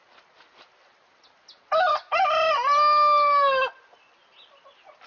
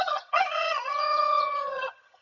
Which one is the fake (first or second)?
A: second